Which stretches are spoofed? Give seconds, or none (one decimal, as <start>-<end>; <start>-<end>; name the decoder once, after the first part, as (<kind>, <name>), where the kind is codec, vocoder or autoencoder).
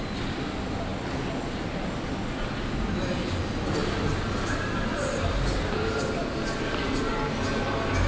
none